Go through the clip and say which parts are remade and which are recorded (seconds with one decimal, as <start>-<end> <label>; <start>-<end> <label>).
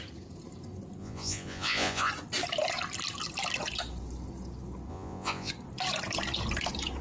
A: 0.0-1.0 recorded; 1.0-2.1 remade; 2.1-4.9 recorded; 4.9-5.5 remade; 5.5-7.0 recorded